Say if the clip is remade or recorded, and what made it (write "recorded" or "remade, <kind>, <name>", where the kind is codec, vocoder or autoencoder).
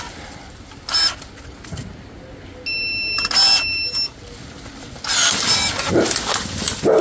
recorded